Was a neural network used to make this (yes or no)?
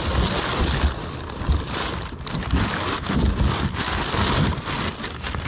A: no